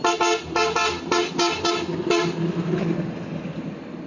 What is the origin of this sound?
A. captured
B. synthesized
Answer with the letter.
A